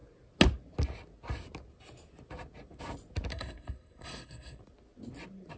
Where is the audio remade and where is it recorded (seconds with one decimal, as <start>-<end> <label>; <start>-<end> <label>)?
0.0-3.3 recorded; 3.3-4.6 remade; 4.6-5.6 recorded